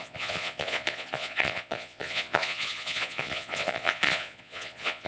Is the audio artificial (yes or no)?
yes